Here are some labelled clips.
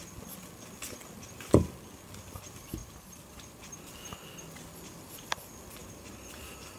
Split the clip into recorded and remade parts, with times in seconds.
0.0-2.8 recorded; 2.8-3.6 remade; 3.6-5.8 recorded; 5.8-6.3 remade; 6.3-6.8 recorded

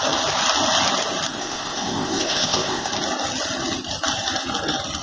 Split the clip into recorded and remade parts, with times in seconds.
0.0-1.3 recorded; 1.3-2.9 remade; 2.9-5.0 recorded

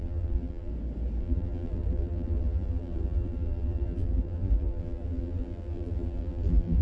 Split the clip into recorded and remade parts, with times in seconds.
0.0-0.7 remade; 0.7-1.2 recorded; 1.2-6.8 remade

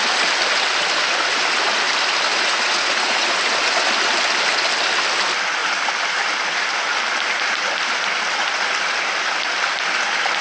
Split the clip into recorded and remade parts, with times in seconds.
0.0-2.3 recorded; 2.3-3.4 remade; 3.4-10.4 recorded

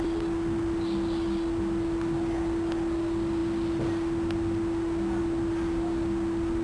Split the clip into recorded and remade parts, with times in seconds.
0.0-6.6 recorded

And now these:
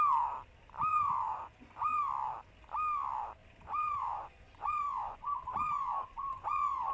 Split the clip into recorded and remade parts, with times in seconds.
0.0-0.9 recorded; 0.9-2.0 remade; 2.0-3.4 recorded; 3.4-6.9 remade

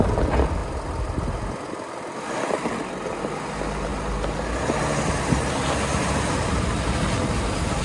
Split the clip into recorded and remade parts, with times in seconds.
0.0-7.8 recorded